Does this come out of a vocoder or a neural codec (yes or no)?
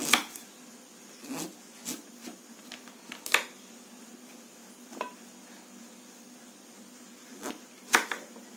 no